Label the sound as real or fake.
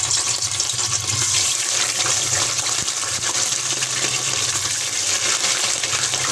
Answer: real